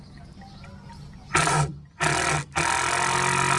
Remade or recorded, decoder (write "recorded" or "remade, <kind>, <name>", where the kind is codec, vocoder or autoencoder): recorded